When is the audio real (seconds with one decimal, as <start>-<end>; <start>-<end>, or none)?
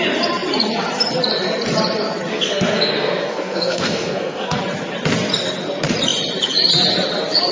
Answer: 0.0-2.3; 4.6-7.5